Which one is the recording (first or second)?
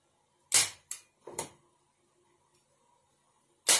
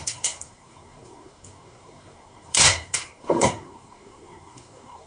first